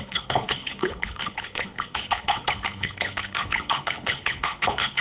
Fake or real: fake